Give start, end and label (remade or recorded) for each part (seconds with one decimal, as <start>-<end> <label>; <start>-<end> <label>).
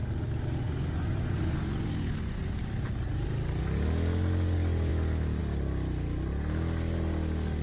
0.0-0.6 recorded; 0.6-2.6 remade; 2.6-7.6 recorded